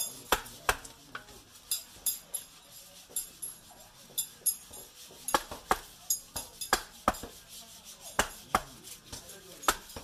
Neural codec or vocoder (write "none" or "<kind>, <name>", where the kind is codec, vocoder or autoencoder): none